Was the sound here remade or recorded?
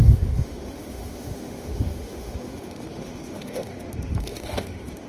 remade